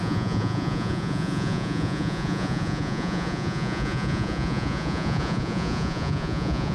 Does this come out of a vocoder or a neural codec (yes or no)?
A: yes